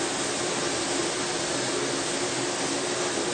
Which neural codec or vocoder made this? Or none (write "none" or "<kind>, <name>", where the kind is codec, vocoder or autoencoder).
none